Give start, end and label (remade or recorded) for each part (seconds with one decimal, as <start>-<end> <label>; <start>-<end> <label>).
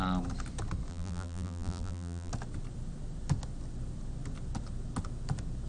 0.0-0.9 recorded; 0.9-2.3 remade; 2.3-5.7 recorded